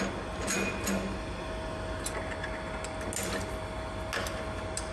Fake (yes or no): no